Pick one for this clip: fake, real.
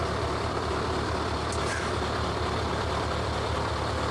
real